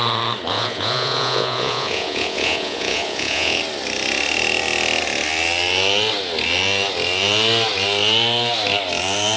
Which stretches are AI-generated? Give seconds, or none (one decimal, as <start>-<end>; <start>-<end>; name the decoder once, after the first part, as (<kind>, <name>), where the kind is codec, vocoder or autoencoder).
0.5-3.6 (vocoder, Vocos)